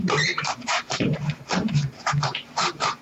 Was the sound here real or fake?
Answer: fake